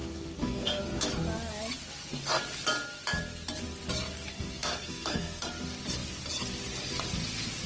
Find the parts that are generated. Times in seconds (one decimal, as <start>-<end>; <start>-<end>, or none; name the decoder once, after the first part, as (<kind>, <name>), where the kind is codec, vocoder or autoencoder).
0.0-1.1 (codec, SNAC); 4.3-5.5